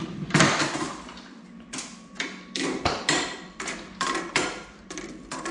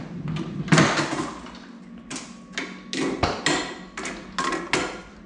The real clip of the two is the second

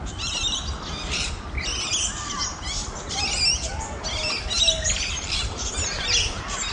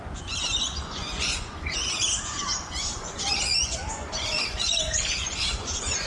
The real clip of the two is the first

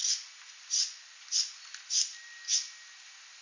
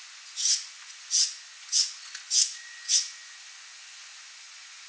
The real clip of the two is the first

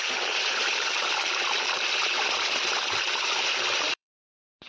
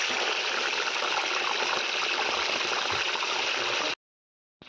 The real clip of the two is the second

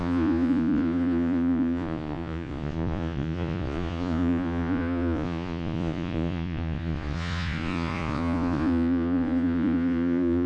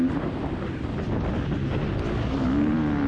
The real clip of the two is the second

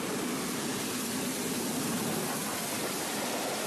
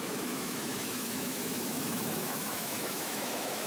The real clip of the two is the first